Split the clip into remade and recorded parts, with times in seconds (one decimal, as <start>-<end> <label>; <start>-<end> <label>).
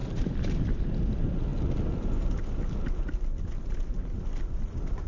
0.0-1.5 remade; 1.5-4.1 recorded; 4.1-5.1 remade